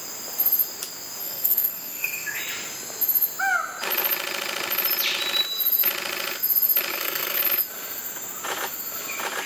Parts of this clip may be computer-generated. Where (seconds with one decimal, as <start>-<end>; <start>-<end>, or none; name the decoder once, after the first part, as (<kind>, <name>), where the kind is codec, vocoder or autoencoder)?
1.2-2.4 (codec, SNAC); 6.9-7.4